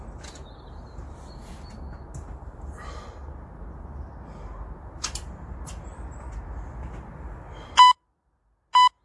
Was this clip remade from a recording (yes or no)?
no